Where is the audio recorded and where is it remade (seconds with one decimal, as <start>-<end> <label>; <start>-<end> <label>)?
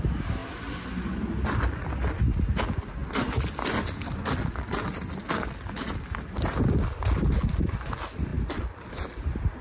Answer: 0.0-9.6 recorded